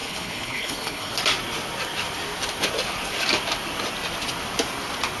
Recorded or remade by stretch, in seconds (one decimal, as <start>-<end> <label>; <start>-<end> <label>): 0.0-1.1 remade; 1.1-5.2 recorded